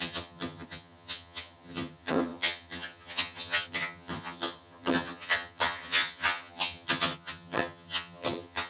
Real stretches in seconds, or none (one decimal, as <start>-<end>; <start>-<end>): none